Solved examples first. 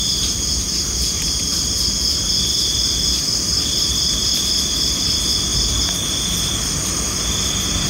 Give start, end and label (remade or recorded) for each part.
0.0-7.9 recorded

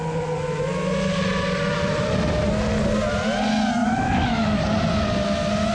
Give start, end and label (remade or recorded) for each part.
0.0-3.8 recorded; 3.8-4.6 remade; 4.6-5.7 recorded